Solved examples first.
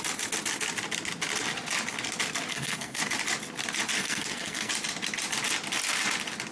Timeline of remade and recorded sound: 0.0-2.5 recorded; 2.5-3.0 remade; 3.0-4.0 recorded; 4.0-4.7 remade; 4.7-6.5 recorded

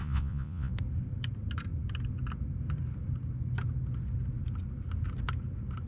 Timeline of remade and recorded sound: 0.0-0.7 remade; 0.7-5.9 recorded

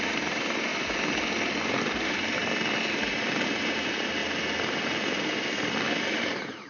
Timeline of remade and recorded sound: 0.0-0.7 remade; 0.7-1.8 recorded; 1.8-2.4 remade; 2.4-2.9 recorded; 2.9-4.2 remade; 4.2-6.0 recorded; 6.0-6.7 remade